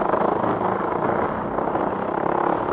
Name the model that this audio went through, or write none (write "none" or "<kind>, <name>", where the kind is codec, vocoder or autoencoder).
none